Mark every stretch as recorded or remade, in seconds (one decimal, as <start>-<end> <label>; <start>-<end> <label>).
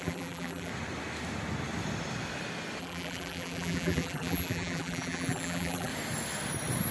0.0-0.7 remade; 0.7-2.8 recorded; 2.8-5.9 remade; 5.9-6.9 recorded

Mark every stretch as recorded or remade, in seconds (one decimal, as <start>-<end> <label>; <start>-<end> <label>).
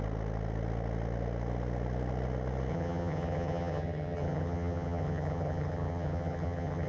0.0-2.7 recorded; 2.7-6.9 remade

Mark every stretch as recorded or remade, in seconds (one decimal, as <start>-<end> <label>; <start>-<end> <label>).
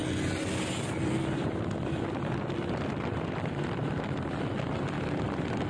0.0-0.5 recorded; 0.5-5.7 remade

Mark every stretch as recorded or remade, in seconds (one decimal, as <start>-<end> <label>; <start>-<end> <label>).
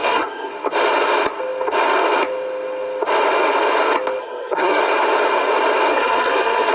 0.0-0.5 remade; 0.5-4.2 recorded; 4.2-4.8 remade; 4.8-5.9 recorded; 5.9-6.7 remade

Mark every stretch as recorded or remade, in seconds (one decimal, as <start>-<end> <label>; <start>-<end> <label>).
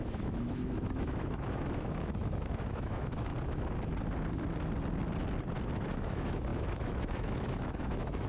0.0-3.3 remade; 3.3-5.8 recorded; 5.8-8.3 remade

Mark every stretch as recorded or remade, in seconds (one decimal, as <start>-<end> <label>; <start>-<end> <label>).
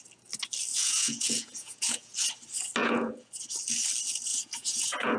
0.0-0.7 recorded; 0.7-2.3 remade; 2.3-2.8 recorded; 2.8-3.3 remade; 3.3-4.3 recorded; 4.3-5.2 remade